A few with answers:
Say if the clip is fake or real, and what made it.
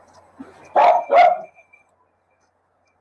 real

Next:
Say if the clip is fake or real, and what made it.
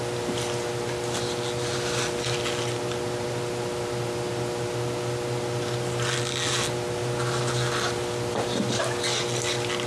real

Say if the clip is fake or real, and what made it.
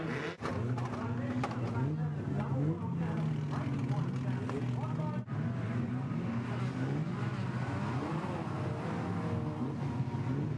real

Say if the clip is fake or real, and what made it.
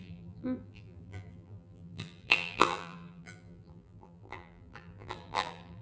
fake, vocoder, BigVGAN v2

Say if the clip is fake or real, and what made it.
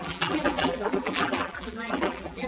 fake, vocoder, BigVGAN v2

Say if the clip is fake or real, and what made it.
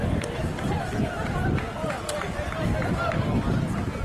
real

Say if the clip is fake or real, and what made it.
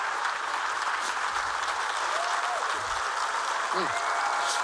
real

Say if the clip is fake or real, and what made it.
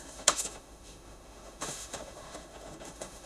fake, autoencoder, DAC-VAE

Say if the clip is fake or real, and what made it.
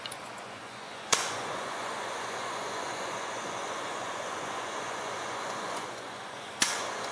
fake, vocoder, Vocos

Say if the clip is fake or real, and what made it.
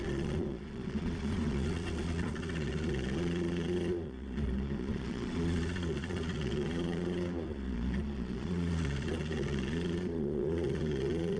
fake, vocoder, Vocos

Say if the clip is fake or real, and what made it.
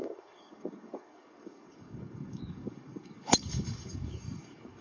fake, codec, DAC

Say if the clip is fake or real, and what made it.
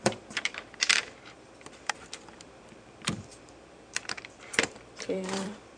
fake, vocoder, BigVGAN v2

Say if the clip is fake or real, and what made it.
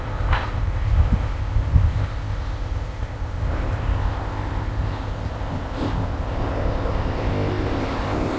fake, codec, ZipCodec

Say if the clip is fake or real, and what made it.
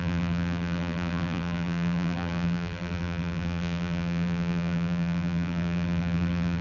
fake, vocoder, BigVGAN v2